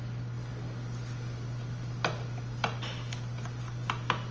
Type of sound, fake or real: real